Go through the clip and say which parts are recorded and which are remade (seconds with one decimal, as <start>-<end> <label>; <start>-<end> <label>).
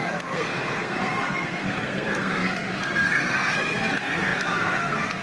0.0-5.2 remade